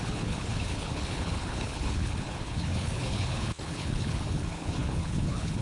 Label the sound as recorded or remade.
remade